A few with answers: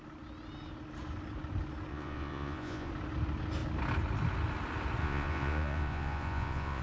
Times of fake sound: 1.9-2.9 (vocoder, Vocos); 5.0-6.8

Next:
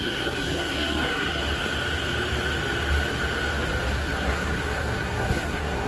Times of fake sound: 0.0-1.4 (codec, SNAC); 3.9-5.9

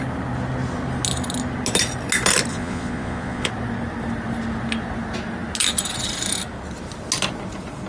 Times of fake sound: 2.5-3.5 (vocoder, Vocos)